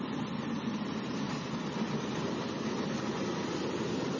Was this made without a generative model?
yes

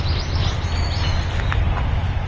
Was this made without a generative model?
yes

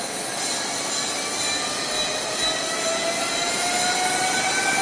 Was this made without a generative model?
yes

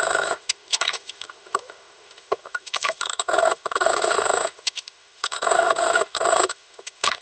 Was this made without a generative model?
no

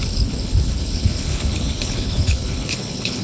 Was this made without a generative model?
no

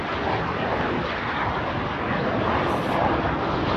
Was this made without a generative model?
yes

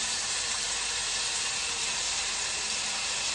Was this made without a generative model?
no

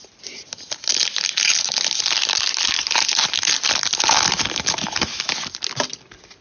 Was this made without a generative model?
yes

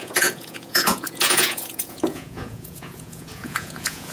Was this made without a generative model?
no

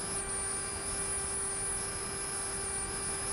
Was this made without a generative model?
yes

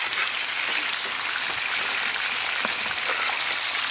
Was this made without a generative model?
yes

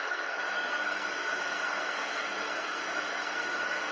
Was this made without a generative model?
no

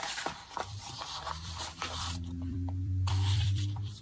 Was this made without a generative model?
no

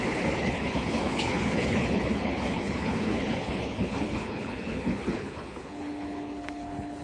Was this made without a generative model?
no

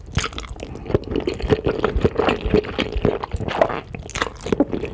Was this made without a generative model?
yes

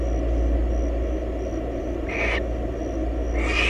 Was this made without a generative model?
yes